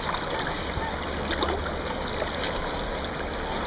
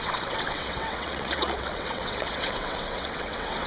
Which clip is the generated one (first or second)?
second